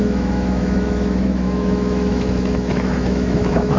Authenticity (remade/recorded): remade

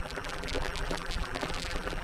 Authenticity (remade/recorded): remade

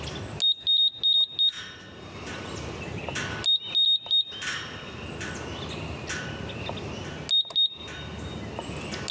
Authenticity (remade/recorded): recorded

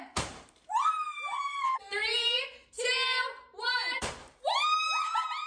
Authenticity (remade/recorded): remade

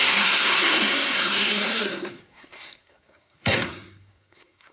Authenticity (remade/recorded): remade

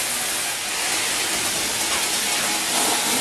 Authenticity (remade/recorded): recorded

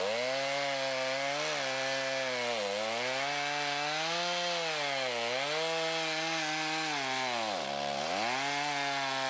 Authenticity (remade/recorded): recorded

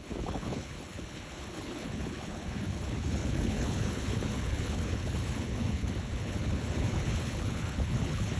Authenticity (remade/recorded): remade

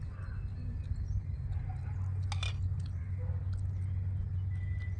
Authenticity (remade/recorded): recorded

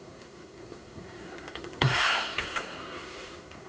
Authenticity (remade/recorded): remade